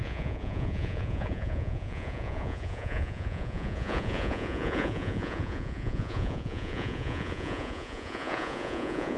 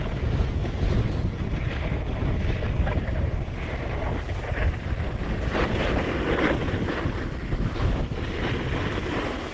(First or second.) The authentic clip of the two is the second